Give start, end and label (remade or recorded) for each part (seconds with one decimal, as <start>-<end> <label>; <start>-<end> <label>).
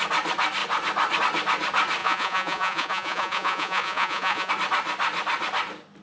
0.0-2.0 recorded; 2.0-4.5 remade; 4.5-6.0 recorded